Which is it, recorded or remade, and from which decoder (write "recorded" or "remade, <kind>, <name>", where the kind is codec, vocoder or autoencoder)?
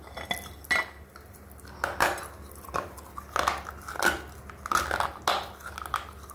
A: recorded